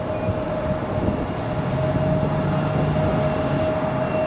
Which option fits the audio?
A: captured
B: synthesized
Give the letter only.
A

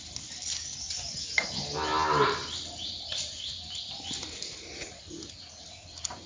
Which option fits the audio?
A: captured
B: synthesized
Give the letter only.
A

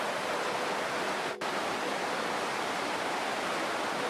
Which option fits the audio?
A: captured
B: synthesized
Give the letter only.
A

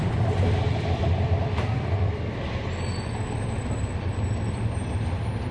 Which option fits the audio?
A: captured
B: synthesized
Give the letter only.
B